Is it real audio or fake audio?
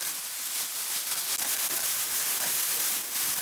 real